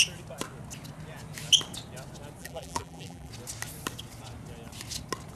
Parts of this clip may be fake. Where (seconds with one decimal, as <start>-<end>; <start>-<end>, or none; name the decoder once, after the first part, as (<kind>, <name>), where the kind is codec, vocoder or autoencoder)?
2.4-3.3 (vocoder, BigVGAN v2)